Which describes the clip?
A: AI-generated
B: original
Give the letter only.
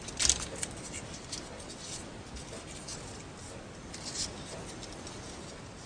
B